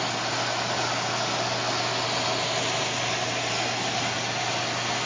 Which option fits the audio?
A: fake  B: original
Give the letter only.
B